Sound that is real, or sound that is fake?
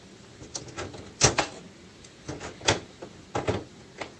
real